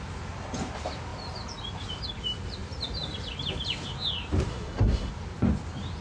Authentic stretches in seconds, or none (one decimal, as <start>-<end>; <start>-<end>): 0.0-4.5; 5.1-6.0